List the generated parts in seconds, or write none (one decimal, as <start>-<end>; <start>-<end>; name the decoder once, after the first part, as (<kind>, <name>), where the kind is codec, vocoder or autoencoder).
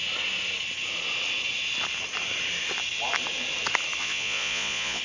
4.0-5.0 (vocoder, Vocos)